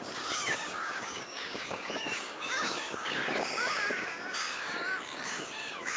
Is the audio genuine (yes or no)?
no